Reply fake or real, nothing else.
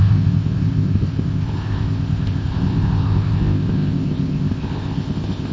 fake